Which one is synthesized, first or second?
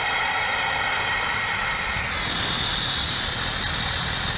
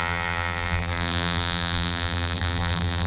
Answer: second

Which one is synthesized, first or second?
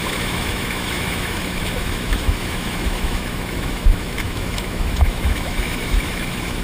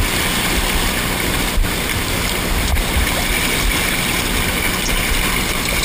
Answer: first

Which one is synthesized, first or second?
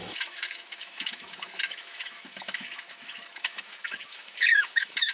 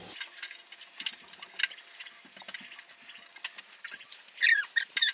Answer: first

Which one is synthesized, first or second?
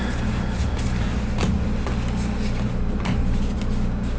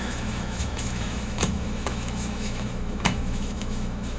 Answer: second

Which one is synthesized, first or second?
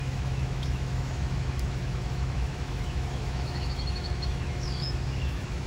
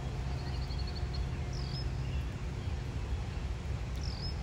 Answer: first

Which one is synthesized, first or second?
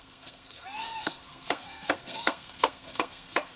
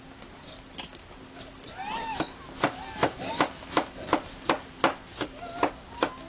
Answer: first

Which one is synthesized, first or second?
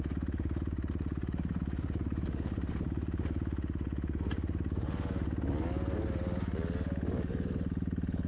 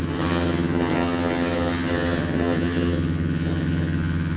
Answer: second